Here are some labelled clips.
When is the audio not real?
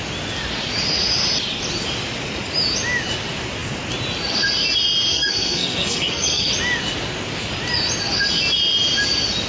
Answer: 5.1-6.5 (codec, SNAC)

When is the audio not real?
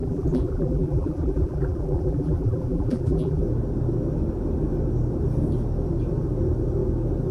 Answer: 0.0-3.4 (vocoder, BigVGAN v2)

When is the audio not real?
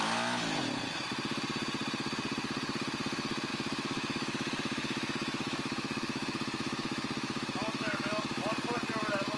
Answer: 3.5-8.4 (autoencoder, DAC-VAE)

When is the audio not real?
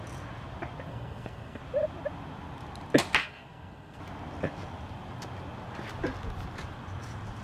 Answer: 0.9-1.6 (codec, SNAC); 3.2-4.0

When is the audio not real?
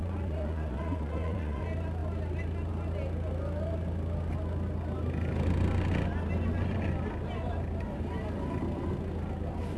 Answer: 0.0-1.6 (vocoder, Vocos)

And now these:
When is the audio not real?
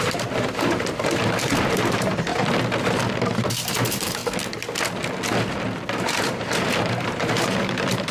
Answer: 0.0-2.3 (vocoder, BigVGAN v2); 3.5-4.2; 6.0-8.1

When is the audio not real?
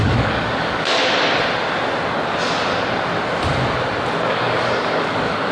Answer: 0.0-1.0 (codec, DAC); 4.3-5.5